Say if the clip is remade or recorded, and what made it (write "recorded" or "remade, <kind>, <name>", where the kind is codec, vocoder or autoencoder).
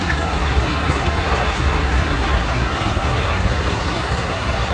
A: remade, codec, SNAC